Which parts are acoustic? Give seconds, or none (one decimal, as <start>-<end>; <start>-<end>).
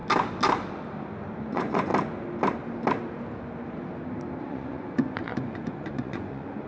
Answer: 0.0-1.4; 1.9-4.4